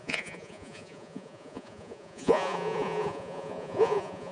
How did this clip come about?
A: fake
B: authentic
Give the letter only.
A